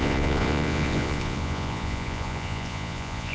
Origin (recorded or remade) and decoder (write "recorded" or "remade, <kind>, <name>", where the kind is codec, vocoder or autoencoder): remade, vocoder, Vocos